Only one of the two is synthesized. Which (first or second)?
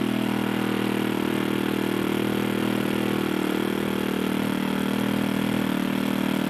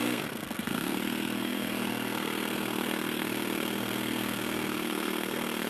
second